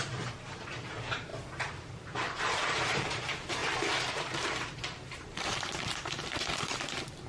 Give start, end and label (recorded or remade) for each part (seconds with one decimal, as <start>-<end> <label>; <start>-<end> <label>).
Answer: 0.0-1.3 remade; 1.3-1.9 recorded; 1.9-7.3 remade